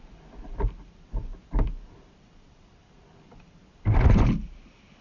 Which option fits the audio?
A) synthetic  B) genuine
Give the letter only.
B